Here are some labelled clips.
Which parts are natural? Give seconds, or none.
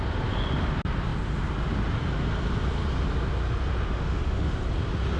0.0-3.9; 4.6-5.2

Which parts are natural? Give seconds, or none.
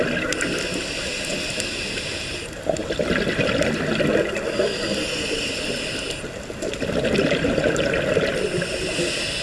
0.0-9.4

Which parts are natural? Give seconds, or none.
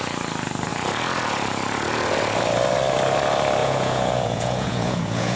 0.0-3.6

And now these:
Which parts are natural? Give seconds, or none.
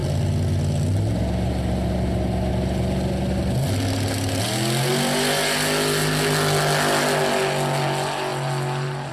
0.0-9.1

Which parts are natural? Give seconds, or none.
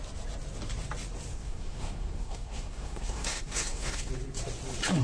0.0-1.3; 4.1-5.0